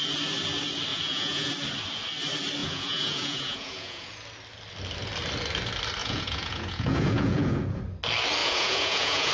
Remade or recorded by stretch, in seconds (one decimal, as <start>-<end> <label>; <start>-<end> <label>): 0.0-0.9 recorded; 0.9-1.5 remade; 1.5-2.6 recorded; 2.6-4.1 remade; 4.1-6.0 recorded; 6.0-7.8 remade; 7.8-8.4 recorded; 8.4-9.3 remade